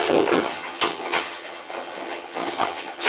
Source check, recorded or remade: remade